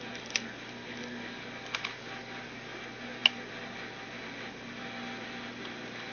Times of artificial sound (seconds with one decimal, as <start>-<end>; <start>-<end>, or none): none